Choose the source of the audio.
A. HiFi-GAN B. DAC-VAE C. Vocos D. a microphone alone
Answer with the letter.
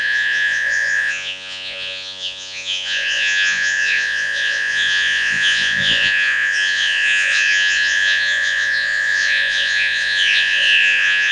C